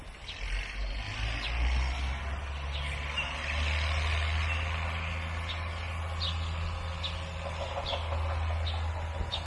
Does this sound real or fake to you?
real